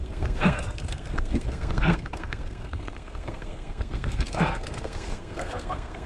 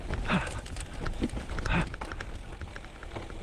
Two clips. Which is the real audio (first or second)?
second